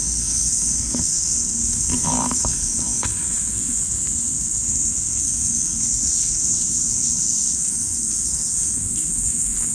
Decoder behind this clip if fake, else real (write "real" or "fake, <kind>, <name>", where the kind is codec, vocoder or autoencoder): fake, codec, SNAC